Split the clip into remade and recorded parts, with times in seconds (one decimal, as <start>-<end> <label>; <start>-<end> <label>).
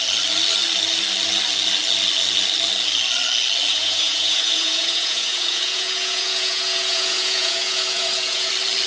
0.0-3.7 recorded; 3.7-8.5 remade; 8.5-8.9 recorded